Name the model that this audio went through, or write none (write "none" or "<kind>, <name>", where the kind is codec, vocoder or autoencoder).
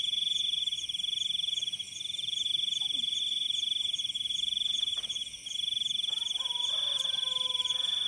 none